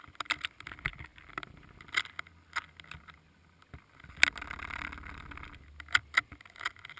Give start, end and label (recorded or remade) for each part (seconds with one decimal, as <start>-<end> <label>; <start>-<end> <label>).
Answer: 0.0-7.0 recorded